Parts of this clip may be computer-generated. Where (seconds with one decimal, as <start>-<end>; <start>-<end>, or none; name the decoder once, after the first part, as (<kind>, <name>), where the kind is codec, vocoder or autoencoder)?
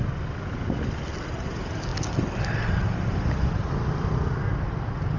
none